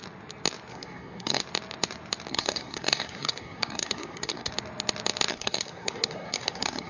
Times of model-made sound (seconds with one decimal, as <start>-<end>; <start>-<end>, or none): 0.7-1.4; 2.3-4.5; 5.3-6.9